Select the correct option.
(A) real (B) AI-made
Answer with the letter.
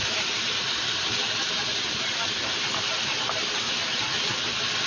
A